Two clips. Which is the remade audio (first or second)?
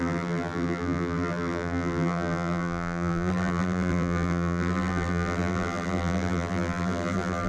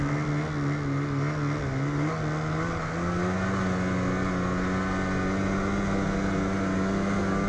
first